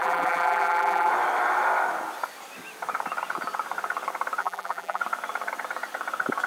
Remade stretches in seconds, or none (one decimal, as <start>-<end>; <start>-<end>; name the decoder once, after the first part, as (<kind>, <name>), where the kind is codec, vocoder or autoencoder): 0.0-1.1 (vocoder, BigVGAN v2); 4.4-5.0